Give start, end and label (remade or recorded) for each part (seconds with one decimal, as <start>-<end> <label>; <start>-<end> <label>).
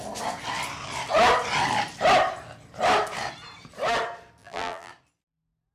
0.0-4.4 recorded; 4.4-4.9 remade; 4.9-5.7 recorded